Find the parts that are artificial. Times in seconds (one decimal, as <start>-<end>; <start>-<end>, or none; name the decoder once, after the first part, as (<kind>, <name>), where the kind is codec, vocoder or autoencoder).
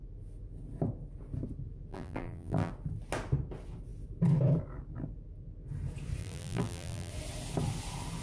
1.9-2.7 (vocoder, BigVGAN v2); 6.2-7.1